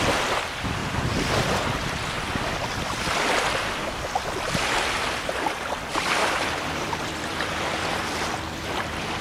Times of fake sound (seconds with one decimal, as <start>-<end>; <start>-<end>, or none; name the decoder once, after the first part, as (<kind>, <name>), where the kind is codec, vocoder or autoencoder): 6.2-7.0 (vocoder, BigVGAN v2)